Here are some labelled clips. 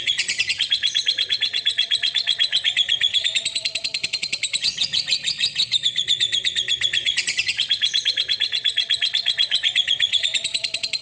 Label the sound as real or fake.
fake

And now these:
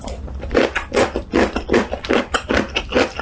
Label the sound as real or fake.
real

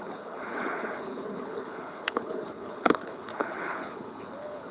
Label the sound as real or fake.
fake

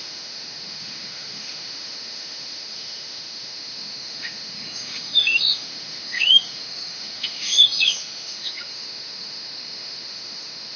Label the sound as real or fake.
fake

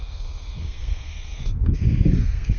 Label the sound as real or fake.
fake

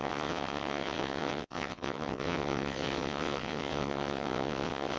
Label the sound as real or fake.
fake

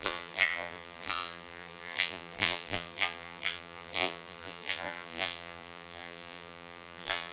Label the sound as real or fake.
fake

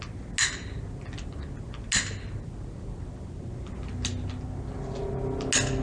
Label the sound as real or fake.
real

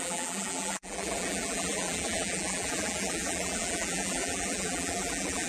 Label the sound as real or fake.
fake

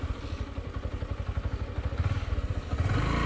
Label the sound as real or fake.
real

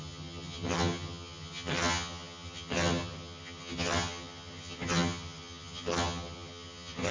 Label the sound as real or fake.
fake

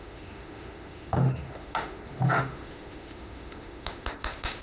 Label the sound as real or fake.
fake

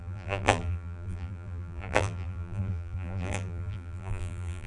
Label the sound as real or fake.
fake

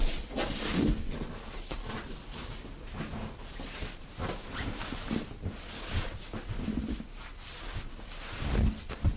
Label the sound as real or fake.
real